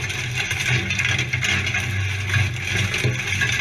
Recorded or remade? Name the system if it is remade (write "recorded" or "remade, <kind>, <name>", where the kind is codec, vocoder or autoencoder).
recorded